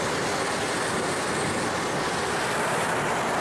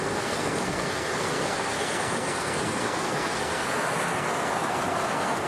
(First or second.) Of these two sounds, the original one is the first